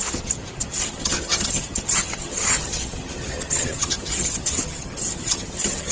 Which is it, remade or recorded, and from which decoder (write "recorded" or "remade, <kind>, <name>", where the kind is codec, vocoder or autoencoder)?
remade, vocoder, HiFi-GAN